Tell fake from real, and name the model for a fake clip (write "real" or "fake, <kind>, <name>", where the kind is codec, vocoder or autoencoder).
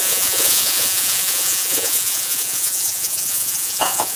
fake, vocoder, Vocos